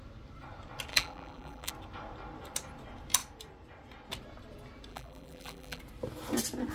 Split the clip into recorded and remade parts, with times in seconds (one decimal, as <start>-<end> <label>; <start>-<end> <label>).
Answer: 0.0-0.9 recorded; 0.9-1.7 remade; 1.7-4.9 recorded; 4.9-5.8 remade; 5.8-6.7 recorded